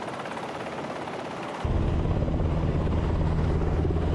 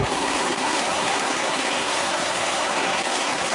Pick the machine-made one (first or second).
second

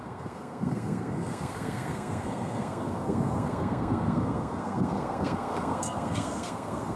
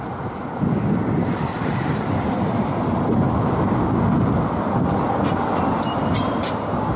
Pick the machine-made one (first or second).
first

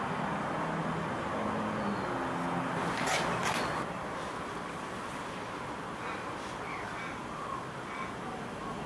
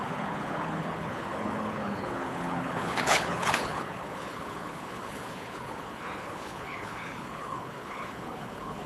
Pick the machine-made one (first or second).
second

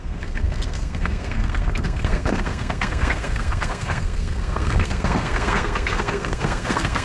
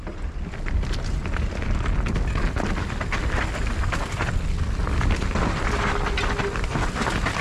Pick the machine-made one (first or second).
first